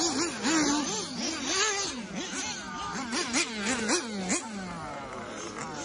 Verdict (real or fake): real